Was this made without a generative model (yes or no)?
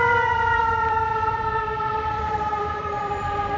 no